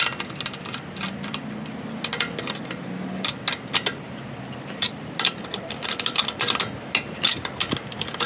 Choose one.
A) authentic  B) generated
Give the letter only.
A